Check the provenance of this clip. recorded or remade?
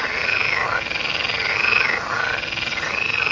recorded